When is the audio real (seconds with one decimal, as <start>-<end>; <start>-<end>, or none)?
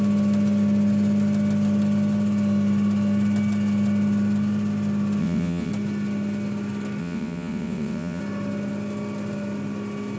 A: 0.0-5.2; 5.7-7.0; 8.2-10.2